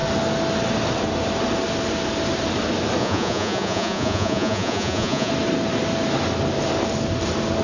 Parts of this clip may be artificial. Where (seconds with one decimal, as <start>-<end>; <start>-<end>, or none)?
3.0-5.3